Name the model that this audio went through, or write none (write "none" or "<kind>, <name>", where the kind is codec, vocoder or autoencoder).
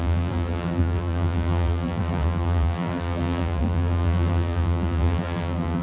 vocoder, BigVGAN v2